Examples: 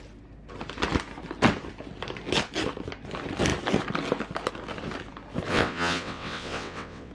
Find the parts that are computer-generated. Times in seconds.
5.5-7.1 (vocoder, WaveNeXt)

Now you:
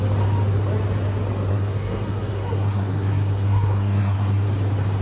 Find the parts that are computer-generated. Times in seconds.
1.5-4.5 (codec, SNAC)

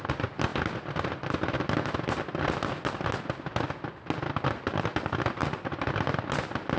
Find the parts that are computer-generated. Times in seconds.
none

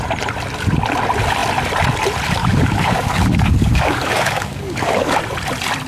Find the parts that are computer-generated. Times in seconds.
2.4-5.2 (codec, DAC)

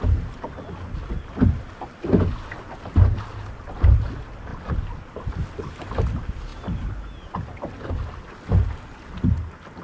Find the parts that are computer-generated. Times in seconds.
none

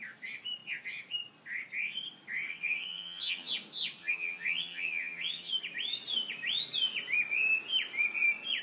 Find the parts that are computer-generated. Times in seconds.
2.5-3.5 (vocoder, HiFi-GAN); 4.0-5.5